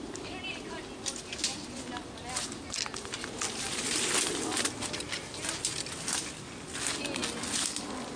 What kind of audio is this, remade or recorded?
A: recorded